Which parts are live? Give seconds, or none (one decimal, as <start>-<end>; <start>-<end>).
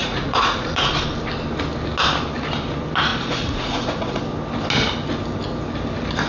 0.9-3.1; 4.2-6.3